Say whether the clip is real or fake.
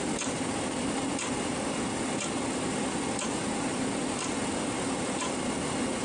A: real